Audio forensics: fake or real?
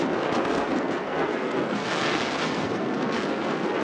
fake